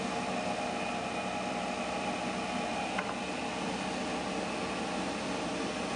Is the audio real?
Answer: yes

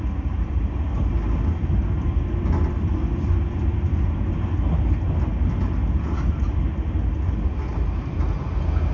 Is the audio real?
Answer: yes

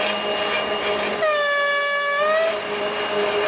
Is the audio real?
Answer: yes